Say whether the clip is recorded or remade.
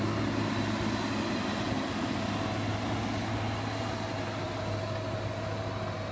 recorded